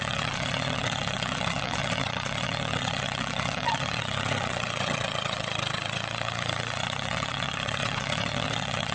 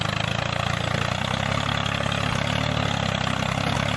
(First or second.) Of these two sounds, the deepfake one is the first